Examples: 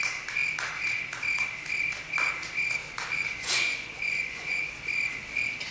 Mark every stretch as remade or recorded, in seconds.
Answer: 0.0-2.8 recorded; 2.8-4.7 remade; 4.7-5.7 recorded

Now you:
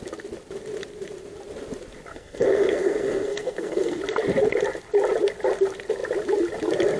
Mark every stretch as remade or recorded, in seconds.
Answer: 0.0-2.1 recorded; 2.1-4.0 remade; 4.0-7.0 recorded

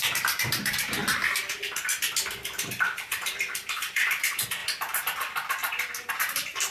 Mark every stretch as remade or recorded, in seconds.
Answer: 0.0-1.0 remade; 1.0-2.7 recorded; 2.7-4.6 remade; 4.6-6.1 recorded; 6.1-6.7 remade